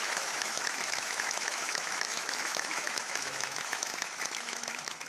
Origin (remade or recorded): remade